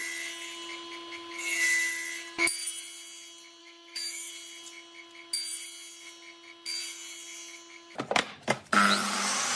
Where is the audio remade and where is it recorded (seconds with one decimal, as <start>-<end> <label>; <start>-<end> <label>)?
0.0-3.6 recorded; 3.6-4.3 remade; 4.3-9.6 recorded